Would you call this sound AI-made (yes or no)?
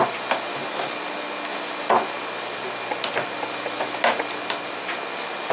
no